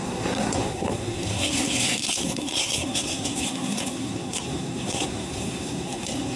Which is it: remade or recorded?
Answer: remade